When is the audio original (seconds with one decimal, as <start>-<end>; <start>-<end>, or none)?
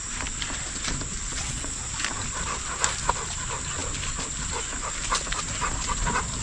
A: 0.0-1.3; 1.9-6.4